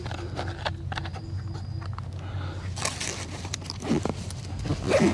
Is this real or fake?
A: real